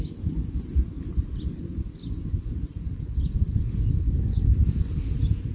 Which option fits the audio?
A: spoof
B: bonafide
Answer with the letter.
B